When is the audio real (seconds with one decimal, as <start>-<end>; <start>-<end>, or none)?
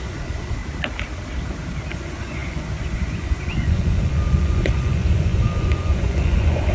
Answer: 0.6-1.9